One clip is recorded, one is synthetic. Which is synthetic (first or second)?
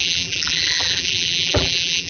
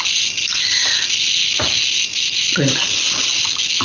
first